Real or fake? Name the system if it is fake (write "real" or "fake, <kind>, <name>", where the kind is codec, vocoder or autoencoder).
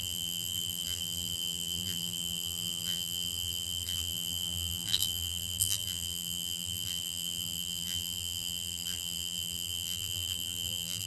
fake, vocoder, BigVGAN v2